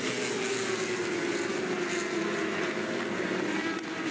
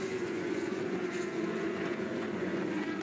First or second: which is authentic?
first